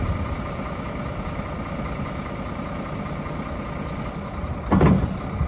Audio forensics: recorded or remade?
recorded